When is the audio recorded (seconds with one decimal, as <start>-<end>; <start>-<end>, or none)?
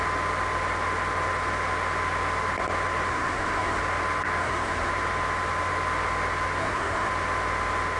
0.0-3.1; 3.8-4.4; 4.9-6.6; 7.1-8.0